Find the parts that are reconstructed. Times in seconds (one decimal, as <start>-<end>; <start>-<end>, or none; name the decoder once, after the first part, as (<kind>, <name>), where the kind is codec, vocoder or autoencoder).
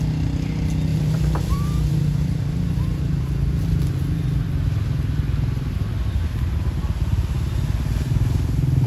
0.9-3.1 (vocoder, BigVGAN v2)